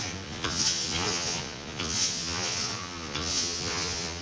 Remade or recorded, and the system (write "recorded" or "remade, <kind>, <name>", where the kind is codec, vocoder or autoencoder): remade, vocoder, Vocos